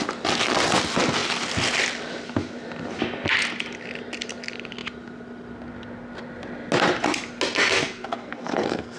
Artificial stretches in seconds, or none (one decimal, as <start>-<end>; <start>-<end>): 7.8-9.0